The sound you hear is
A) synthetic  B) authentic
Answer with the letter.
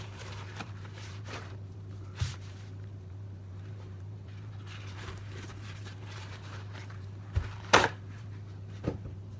A